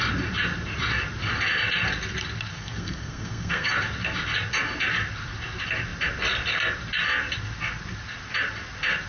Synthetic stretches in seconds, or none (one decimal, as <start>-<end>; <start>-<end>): 2.5-3.7